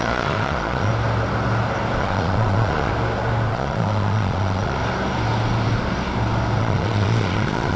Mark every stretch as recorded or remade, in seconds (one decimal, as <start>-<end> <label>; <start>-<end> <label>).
0.0-0.9 remade; 0.9-2.0 recorded; 2.0-2.9 remade; 2.9-3.5 recorded; 3.5-4.8 remade; 4.8-6.6 recorded; 6.6-7.8 remade